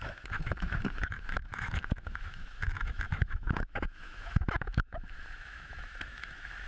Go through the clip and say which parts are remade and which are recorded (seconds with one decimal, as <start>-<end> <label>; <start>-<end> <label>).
0.0-6.7 remade

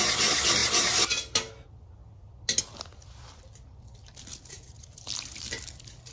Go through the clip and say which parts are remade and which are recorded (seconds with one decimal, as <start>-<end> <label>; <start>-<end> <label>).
0.0-4.3 recorded; 4.3-5.0 remade; 5.0-6.1 recorded

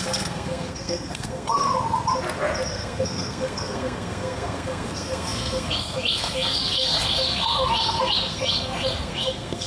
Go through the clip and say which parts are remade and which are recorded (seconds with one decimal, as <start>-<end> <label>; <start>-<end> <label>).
0.0-1.6 remade; 1.6-2.7 recorded; 2.7-9.7 remade

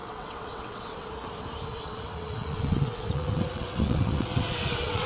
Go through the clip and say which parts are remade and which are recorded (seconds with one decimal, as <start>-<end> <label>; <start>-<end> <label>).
0.0-1.1 remade; 1.1-1.7 recorded; 1.7-5.1 remade

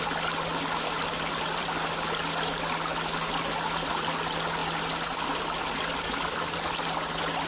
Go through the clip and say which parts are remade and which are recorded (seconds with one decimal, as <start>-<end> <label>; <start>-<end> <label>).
0.0-7.5 recorded

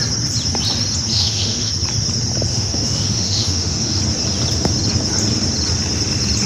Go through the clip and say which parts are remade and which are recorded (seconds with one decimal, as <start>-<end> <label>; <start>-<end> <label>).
0.0-1.1 recorded; 1.1-1.7 remade; 1.7-2.5 recorded; 2.5-4.0 remade; 4.0-6.5 recorded

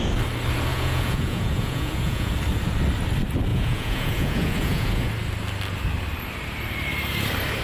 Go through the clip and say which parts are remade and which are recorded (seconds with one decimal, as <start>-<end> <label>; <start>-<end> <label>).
0.0-0.7 recorded; 0.7-2.3 remade; 2.3-3.5 recorded; 3.5-5.1 remade; 5.1-7.6 recorded